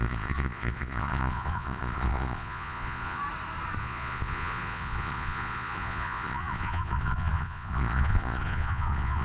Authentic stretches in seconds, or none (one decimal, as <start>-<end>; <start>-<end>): 3.2-3.8